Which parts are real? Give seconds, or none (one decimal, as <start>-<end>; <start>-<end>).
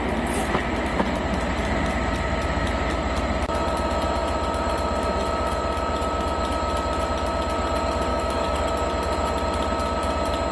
0.0-8.1; 8.7-10.5